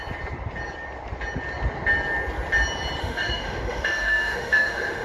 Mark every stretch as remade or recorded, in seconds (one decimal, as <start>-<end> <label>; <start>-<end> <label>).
0.0-3.0 recorded; 3.0-5.0 remade